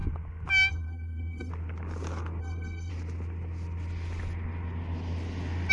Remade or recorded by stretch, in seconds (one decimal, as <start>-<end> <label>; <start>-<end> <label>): 0.0-0.7 recorded; 0.7-1.5 remade; 1.5-2.4 recorded; 2.4-2.9 remade; 2.9-5.7 recorded